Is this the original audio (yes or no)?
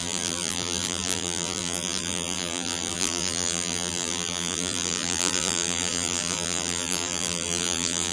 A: no